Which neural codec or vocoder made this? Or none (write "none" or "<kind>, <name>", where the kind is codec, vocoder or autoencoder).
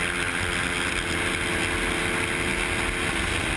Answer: none